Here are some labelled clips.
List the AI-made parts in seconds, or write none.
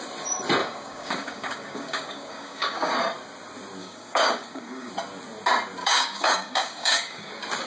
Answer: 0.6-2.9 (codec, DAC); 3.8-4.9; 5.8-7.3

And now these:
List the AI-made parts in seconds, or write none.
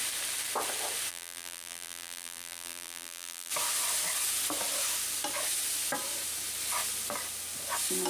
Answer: 1.1-3.5 (vocoder, BigVGAN v2)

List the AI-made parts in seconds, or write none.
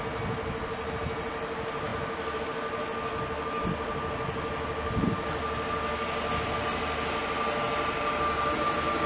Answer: 1.9-2.4 (vocoder, BigVGAN v2)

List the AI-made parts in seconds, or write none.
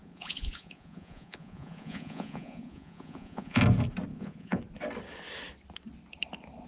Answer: 0.0-3.6 (vocoder, Vocos); 4.1-4.6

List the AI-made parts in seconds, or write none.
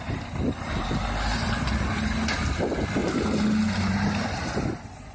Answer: none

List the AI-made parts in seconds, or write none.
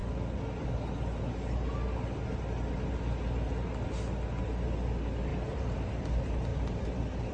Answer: 5.3-5.9 (vocoder, BigVGAN v2); 6.5-7.3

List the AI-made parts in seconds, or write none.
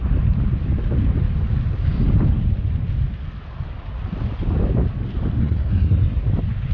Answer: 5.4-6.2 (codec, SNAC)